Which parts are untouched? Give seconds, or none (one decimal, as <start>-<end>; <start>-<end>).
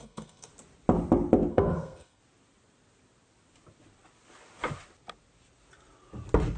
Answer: 0.5-1.5; 2.2-6.6